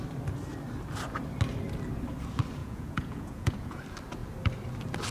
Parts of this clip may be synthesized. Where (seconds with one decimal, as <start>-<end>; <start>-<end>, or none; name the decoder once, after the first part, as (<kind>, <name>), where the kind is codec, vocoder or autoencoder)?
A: 2.6-3.8 (vocoder, Vocos)